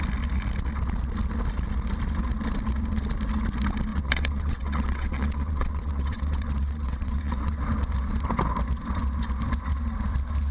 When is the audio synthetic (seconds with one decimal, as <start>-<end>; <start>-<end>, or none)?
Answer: 3.9-7.6